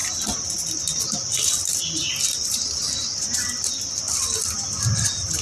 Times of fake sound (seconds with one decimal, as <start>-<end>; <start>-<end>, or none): none